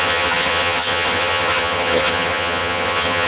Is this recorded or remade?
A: remade